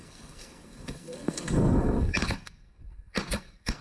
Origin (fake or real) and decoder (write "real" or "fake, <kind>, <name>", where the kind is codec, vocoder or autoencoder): fake, codec, SNAC